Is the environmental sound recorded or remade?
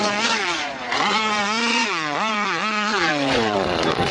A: remade